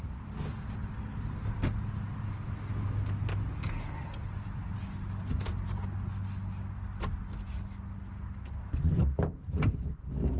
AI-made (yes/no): no